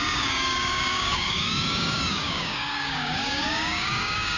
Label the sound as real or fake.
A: fake